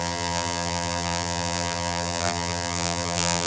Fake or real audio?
fake